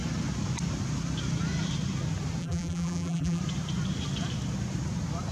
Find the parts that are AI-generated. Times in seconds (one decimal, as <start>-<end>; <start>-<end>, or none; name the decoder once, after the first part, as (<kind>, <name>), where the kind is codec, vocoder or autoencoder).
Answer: 2.4-3.4 (vocoder, BigVGAN v2)